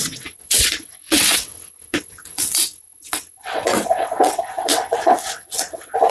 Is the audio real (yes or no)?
no